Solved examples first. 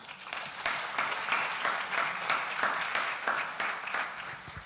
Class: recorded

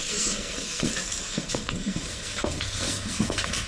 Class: remade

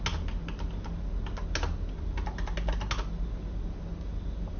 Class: recorded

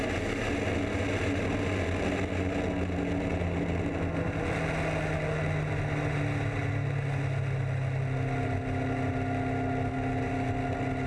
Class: recorded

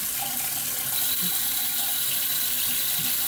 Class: recorded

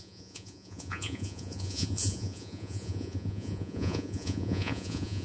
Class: remade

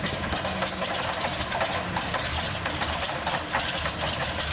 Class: recorded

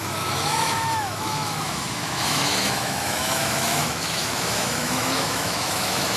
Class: remade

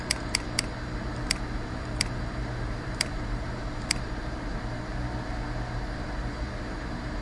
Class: remade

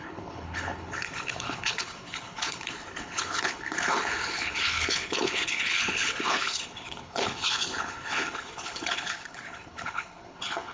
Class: remade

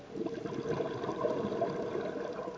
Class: recorded